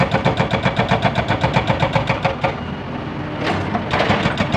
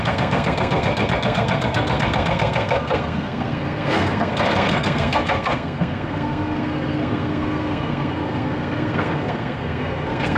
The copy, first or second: second